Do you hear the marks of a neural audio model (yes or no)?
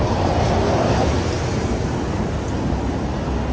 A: no